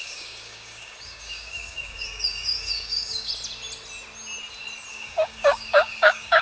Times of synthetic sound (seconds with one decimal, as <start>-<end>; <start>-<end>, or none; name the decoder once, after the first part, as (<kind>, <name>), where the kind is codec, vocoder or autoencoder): 0.0-3.3 (codec, DAC); 4.9-6.4